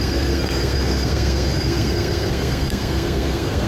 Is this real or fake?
fake